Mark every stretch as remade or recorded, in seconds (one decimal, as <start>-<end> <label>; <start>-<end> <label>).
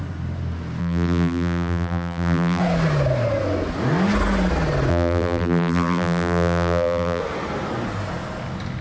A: 0.0-0.8 recorded; 0.8-2.6 remade; 2.6-4.9 recorded; 4.9-7.2 remade; 7.2-8.8 recorded